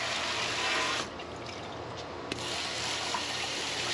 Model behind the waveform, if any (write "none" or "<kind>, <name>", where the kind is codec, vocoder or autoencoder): none